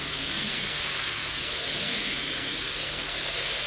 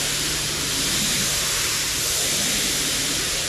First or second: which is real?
second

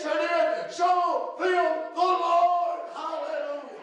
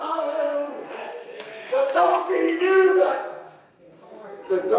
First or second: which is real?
first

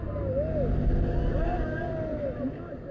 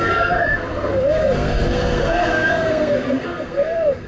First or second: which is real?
first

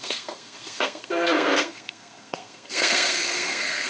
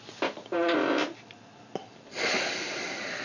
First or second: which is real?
second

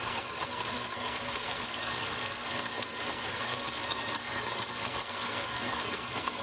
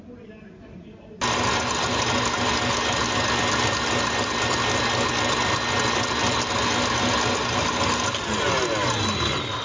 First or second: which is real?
second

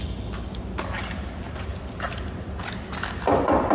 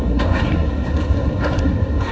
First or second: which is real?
first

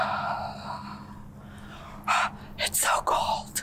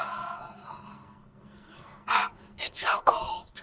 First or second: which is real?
first